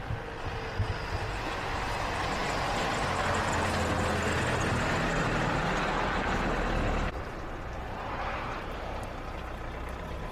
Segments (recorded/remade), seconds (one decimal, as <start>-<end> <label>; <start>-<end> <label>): 0.0-10.3 recorded